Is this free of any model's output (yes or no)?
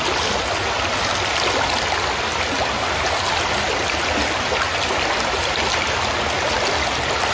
yes